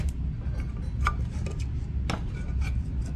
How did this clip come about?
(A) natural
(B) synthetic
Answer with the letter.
A